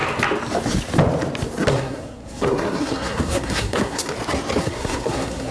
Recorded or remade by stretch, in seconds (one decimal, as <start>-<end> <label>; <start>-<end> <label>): 0.0-1.7 recorded; 1.7-4.1 remade; 4.1-4.6 recorded; 4.6-5.5 remade